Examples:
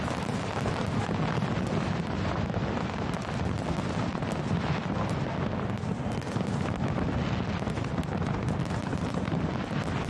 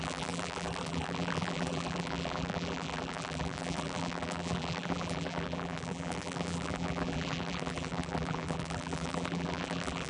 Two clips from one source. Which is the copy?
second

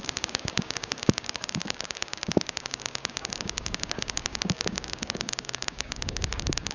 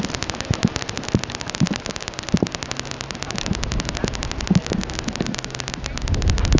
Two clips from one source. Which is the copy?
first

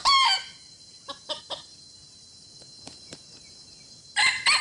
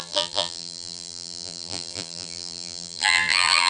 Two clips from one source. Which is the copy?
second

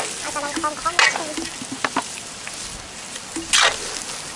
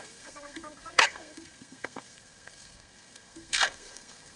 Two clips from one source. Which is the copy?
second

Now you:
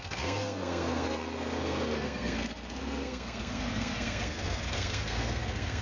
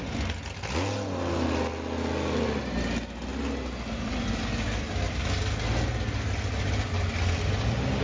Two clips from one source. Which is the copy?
first